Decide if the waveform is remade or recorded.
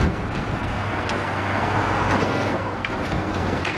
remade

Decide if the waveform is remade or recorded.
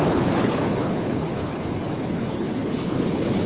remade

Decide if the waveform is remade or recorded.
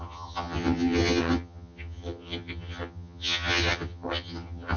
remade